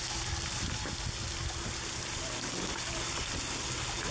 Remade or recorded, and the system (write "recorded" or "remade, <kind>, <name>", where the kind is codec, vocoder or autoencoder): recorded